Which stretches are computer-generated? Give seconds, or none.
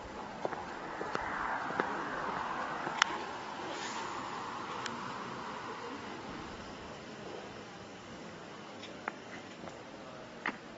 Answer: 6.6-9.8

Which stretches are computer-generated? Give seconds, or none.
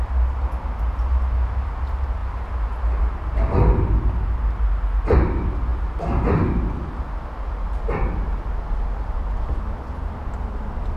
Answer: none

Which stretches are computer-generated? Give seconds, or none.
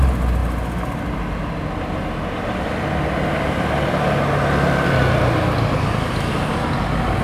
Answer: none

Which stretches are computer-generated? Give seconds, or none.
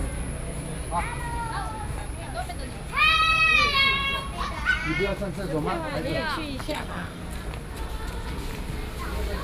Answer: 6.6-7.2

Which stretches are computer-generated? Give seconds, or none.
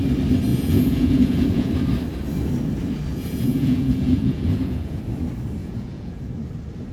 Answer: 0.5-1.7; 3.1-5.0; 5.6-6.2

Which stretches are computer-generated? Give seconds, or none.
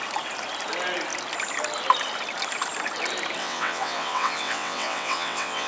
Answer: 3.4-5.7